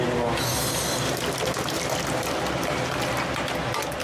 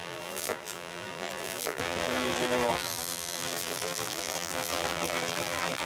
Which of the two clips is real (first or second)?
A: first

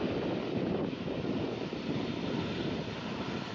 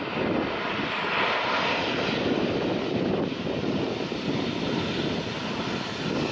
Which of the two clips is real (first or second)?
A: second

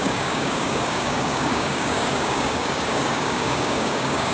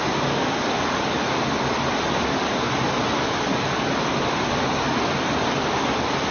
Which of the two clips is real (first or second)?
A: second